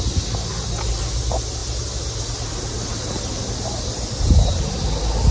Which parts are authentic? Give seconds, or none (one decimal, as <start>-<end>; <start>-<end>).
0.0-5.3